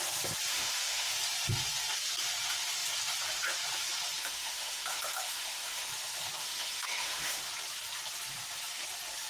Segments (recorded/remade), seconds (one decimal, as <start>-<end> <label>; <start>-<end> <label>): 0.0-0.5 recorded; 0.5-1.1 remade; 1.1-4.2 recorded; 4.2-5.9 remade; 5.9-6.4 recorded; 6.4-7.4 remade; 7.4-9.3 recorded

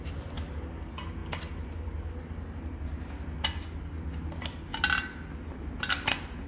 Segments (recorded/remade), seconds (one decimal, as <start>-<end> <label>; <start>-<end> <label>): 0.0-6.5 recorded

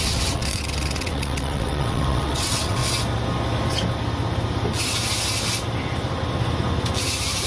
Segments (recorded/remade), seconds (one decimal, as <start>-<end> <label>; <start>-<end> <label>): 0.0-2.8 remade; 2.8-7.5 recorded

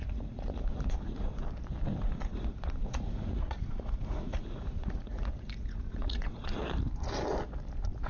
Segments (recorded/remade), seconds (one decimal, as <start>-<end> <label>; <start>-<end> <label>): 0.0-1.4 remade; 1.4-2.0 recorded; 2.0-6.6 remade; 6.6-8.1 recorded

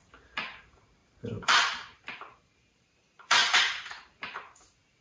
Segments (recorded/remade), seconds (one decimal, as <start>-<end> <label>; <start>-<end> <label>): 0.0-5.0 remade